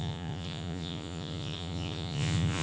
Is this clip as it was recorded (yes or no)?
no